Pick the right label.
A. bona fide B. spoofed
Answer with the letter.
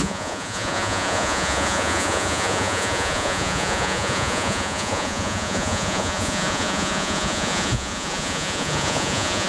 B